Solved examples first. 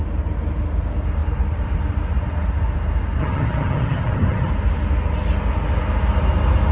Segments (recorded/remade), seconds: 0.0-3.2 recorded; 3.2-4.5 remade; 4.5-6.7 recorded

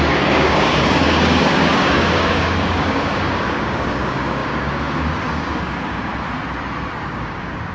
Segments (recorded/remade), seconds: 0.0-6.1 remade; 6.1-7.1 recorded; 7.1-7.7 remade

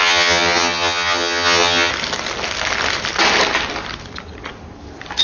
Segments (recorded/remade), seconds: 0.0-1.9 remade; 1.9-5.2 recorded

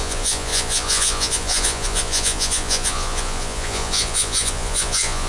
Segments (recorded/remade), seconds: 0.0-5.3 remade

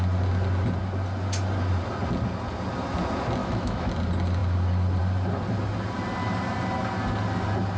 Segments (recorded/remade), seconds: 0.0-3.4 recorded; 3.4-3.9 remade; 3.9-7.8 recorded

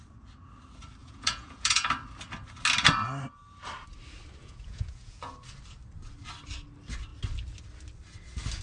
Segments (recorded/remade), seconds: 0.0-1.0 recorded; 1.0-1.9 remade; 1.9-4.4 recorded; 4.4-5.3 remade; 5.3-8.6 recorded

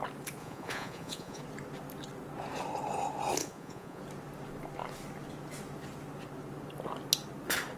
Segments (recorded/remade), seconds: 0.0-0.4 recorded; 0.4-1.4 remade; 1.4-3.4 recorded; 3.4-4.0 remade; 4.0-7.8 recorded

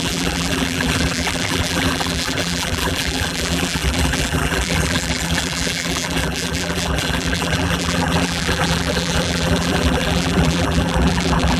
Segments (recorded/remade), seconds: 0.0-11.6 remade